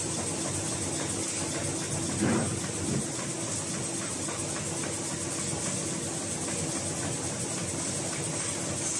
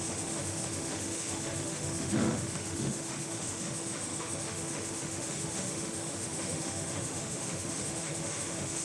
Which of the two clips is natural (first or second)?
first